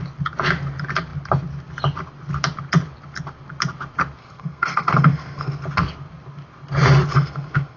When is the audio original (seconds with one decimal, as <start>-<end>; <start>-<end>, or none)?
0.0-4.2; 5.6-7.1